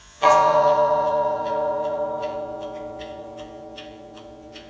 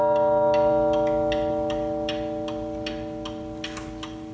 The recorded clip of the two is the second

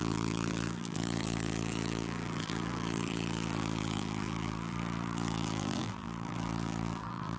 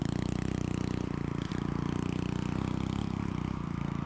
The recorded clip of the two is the second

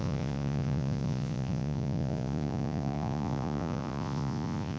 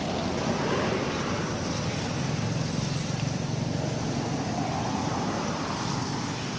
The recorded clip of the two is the second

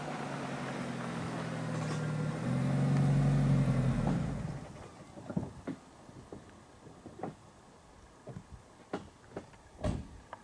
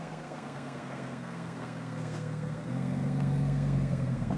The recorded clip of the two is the first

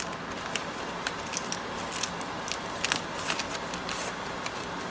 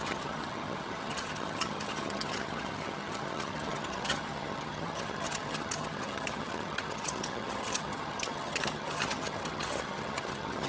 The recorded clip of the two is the first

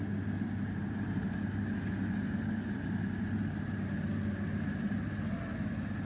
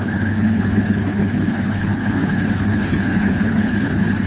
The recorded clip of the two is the first